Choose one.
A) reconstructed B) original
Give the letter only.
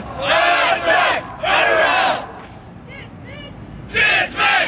B